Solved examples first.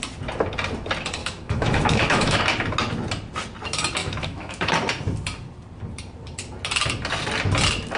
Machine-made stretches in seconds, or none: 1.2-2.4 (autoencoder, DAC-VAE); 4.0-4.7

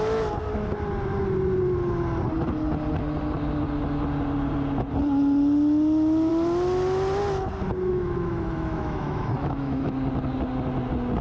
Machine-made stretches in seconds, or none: 7.9-9.9 (autoencoder, DAC-VAE)

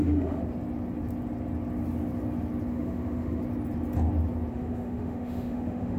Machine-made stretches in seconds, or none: 0.0-0.4 (autoencoder, DAC-VAE); 2.7-3.4; 4.5-6.0